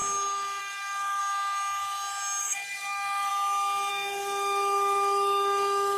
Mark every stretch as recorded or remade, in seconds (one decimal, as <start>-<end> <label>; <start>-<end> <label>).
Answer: 0.0-0.6 recorded; 0.6-1.2 remade; 1.2-2.4 recorded; 2.4-3.3 remade; 3.3-3.9 recorded; 3.9-6.0 remade